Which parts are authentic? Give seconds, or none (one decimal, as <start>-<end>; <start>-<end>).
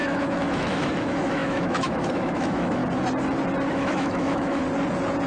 2.8-3.7; 4.6-5.3